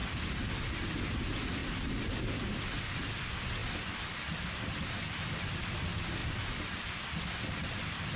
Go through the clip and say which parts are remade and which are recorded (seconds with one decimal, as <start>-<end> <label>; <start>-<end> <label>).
0.0-0.5 remade; 0.5-1.6 recorded; 1.6-2.7 remade; 2.7-6.2 recorded; 6.2-7.2 remade; 7.2-8.2 recorded

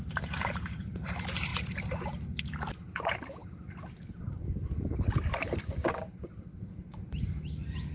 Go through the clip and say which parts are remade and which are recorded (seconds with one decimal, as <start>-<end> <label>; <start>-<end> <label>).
0.0-3.4 remade; 3.4-7.3 recorded; 7.3-7.9 remade

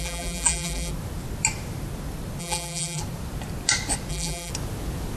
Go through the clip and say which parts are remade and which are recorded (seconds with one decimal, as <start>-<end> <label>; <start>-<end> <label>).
0.0-0.9 remade; 0.9-2.4 recorded; 2.4-3.0 remade; 3.0-4.1 recorded; 4.1-4.5 remade; 4.5-5.2 recorded

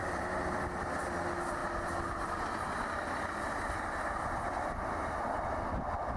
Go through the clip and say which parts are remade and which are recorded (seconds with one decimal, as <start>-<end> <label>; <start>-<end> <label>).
0.0-6.2 recorded